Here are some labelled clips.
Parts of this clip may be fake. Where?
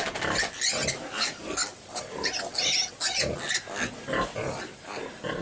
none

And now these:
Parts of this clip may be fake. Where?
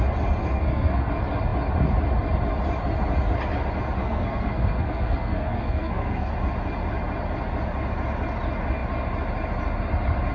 0.4-1.1 (codec, SNAC); 4.0-6.3